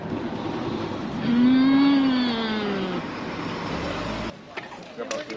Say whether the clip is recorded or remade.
recorded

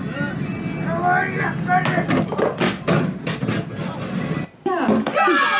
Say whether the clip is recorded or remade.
recorded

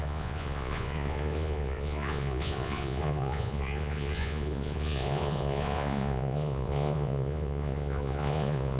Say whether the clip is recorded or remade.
remade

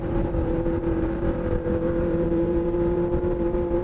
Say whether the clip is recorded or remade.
remade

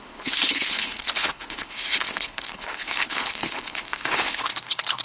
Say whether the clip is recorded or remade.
remade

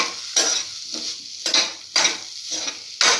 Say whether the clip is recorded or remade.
recorded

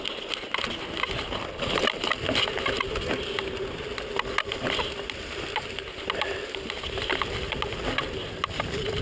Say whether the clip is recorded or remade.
recorded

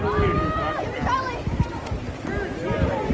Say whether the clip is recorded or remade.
recorded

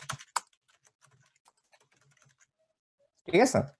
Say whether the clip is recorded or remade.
recorded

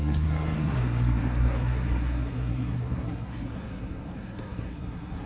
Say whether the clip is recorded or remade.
remade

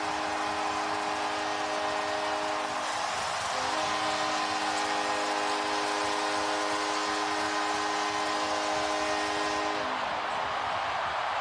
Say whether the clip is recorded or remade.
recorded